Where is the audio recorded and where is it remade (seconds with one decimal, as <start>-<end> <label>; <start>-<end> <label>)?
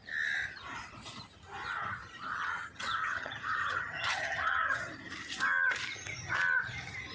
0.0-2.3 recorded; 2.3-4.9 remade; 4.9-7.1 recorded